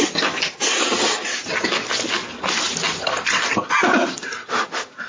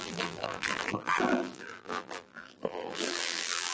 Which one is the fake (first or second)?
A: second